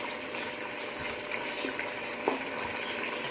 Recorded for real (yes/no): yes